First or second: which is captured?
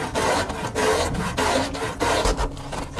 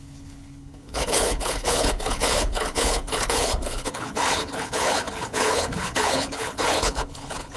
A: first